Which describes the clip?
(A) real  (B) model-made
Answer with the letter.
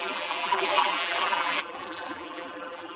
B